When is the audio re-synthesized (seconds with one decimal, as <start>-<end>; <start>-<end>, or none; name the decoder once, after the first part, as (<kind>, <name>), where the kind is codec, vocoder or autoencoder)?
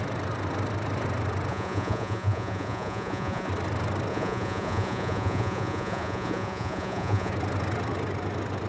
1.5-3.5 (vocoder, Vocos); 4.1-7.3